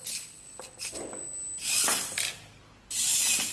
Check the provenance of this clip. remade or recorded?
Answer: recorded